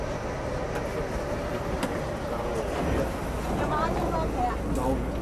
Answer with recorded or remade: recorded